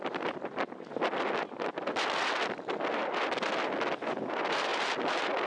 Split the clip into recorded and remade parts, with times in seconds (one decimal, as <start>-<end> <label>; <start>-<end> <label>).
0.0-5.5 recorded